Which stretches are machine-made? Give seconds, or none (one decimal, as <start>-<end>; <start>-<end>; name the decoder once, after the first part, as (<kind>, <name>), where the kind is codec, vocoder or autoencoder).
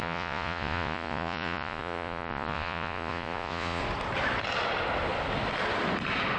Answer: 0.0-3.8 (vocoder, Vocos)